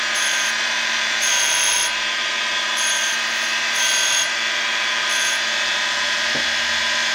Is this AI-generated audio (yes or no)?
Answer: yes